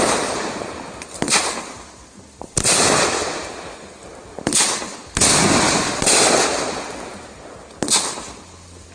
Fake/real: real